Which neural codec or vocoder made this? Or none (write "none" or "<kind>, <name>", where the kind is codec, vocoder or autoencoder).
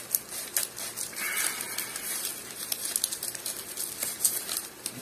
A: none